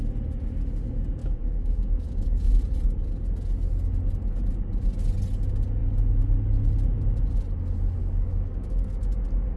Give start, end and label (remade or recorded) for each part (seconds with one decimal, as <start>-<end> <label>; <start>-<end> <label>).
0.0-1.2 recorded; 1.2-2.6 remade; 2.6-8.0 recorded; 8.0-9.0 remade; 9.0-9.6 recorded